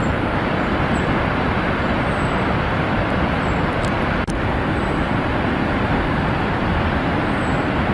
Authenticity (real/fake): fake